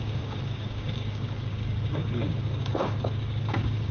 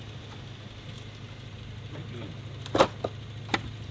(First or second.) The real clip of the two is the second